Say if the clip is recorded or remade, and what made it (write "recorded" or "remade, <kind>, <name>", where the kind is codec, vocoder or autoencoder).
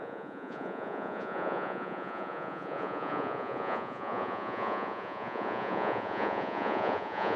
remade, vocoder, Vocos